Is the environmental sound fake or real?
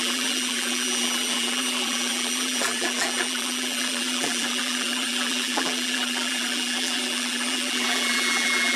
fake